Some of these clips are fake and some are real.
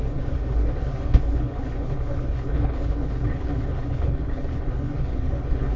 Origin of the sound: fake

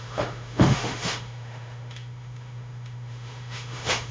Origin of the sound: fake